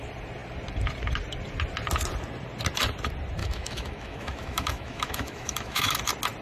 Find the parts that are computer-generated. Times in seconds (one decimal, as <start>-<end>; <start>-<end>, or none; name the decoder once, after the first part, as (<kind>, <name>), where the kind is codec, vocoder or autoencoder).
3.4-6.0 (autoencoder, DAC-VAE)